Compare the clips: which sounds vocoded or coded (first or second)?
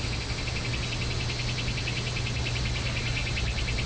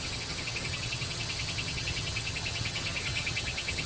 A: second